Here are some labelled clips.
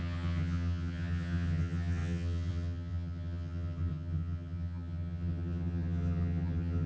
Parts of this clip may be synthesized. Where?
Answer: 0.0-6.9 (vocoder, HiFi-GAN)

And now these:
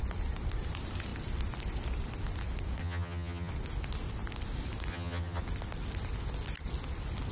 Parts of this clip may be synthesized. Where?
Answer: 2.8-3.5 (vocoder, HiFi-GAN); 4.9-5.4

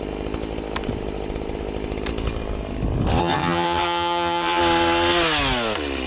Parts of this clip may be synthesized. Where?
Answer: 3.2-4.6 (vocoder, HiFi-GAN)

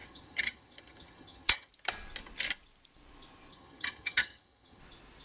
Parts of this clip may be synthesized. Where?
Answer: 0.0-1.7 (vocoder, HiFi-GAN); 3.5-4.8

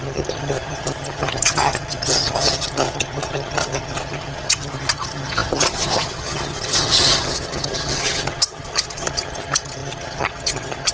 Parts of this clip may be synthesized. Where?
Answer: 0.0-10.9 (vocoder, HiFi-GAN)